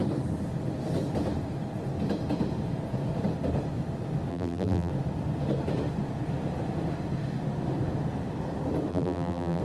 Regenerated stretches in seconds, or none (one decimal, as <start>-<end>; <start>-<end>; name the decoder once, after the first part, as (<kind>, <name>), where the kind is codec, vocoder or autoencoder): 4.3-4.9 (vocoder, BigVGAN v2); 8.9-9.6